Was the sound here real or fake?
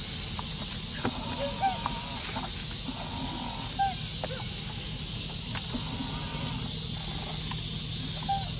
real